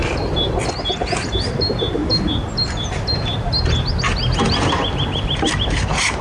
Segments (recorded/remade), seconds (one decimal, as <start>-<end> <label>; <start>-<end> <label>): 0.0-6.2 recorded